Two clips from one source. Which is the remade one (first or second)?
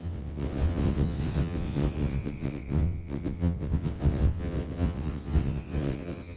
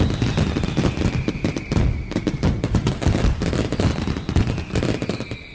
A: first